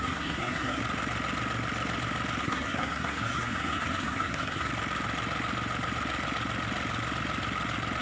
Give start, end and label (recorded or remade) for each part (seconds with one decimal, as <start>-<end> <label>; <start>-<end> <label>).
0.0-0.8 remade; 0.8-2.4 recorded; 2.4-4.7 remade; 4.7-8.0 recorded